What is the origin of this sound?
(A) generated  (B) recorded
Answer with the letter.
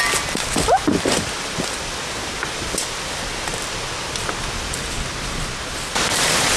B